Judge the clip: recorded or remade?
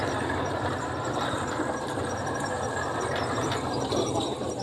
remade